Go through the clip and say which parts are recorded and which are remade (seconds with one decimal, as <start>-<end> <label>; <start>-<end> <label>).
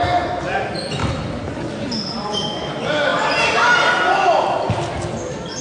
0.0-5.6 recorded